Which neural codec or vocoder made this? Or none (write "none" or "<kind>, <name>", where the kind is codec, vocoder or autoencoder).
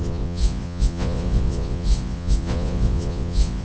vocoder, Vocos